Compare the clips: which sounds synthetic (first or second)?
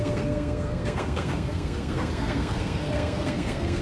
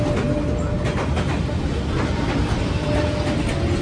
first